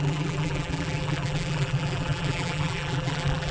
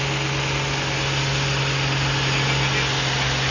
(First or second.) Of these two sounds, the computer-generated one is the first